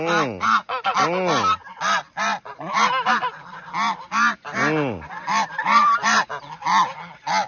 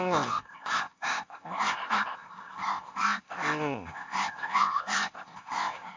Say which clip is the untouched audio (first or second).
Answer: first